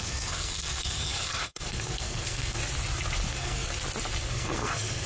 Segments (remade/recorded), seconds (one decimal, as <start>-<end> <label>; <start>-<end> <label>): 0.0-2.6 remade; 2.6-3.3 recorded; 3.3-3.7 remade; 3.7-4.3 recorded; 4.3-5.1 remade